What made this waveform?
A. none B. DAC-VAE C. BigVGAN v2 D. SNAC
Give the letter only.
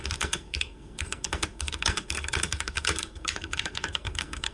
D